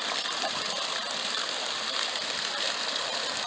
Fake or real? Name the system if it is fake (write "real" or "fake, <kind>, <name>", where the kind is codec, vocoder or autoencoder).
real